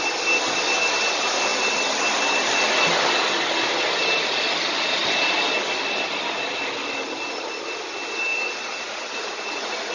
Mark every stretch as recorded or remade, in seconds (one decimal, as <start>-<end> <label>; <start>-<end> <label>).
0.0-8.3 recorded; 8.3-9.9 remade